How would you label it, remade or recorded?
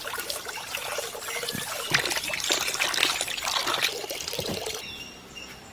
recorded